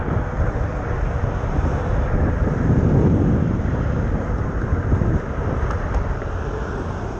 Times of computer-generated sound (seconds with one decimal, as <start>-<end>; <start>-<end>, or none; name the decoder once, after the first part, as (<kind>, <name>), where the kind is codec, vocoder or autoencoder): 1.9-6.2 (vocoder, BigVGAN v2)